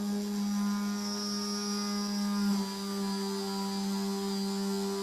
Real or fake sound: real